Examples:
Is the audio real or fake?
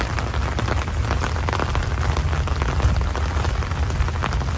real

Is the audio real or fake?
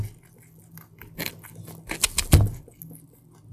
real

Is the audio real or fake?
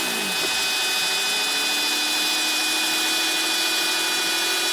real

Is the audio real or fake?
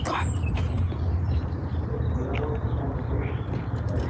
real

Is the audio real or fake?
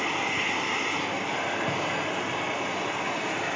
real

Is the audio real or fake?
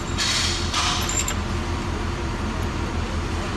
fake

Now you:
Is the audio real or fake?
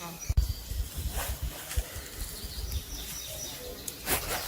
real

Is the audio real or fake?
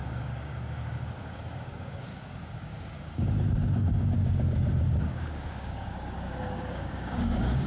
fake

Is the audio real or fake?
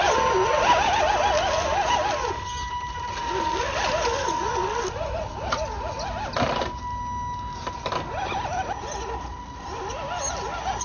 real